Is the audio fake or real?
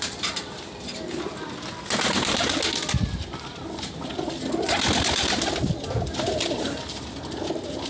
real